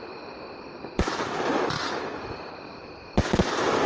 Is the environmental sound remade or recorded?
recorded